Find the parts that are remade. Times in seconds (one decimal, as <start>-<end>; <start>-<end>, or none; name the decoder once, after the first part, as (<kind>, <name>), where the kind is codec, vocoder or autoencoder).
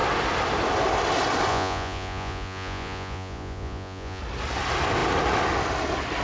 1.5-4.2 (vocoder, Vocos)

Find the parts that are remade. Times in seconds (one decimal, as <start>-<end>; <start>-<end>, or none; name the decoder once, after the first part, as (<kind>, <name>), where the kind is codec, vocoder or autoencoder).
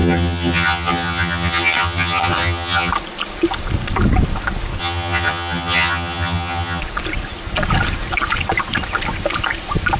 0.0-2.9 (vocoder, HiFi-GAN); 4.8-6.8